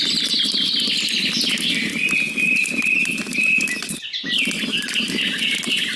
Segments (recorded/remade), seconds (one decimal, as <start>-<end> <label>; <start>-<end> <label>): 0.0-6.0 recorded